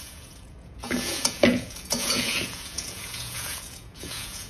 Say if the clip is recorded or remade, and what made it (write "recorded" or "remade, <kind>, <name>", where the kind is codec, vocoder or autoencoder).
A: remade, vocoder, Vocos